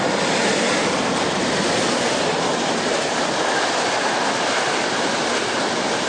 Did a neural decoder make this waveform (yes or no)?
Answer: no